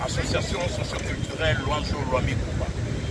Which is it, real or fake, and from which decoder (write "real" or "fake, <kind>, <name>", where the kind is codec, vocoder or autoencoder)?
real